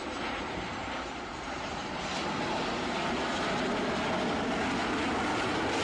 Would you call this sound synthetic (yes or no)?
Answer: no